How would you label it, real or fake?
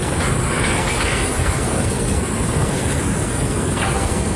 fake